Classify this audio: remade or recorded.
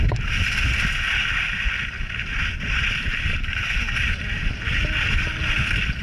recorded